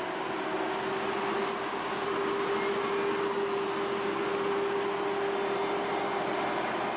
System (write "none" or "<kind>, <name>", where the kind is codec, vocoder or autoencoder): none